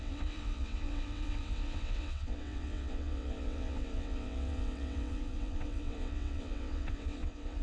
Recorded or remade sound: remade